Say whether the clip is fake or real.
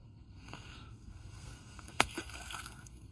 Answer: fake